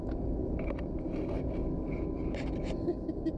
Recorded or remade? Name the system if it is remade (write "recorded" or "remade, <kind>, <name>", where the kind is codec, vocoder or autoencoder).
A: recorded